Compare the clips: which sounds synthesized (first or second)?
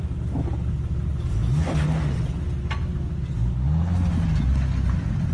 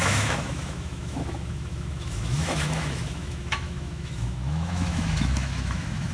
second